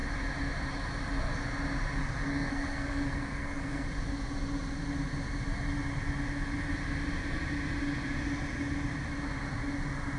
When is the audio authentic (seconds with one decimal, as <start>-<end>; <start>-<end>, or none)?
0.0-2.0; 3.9-10.2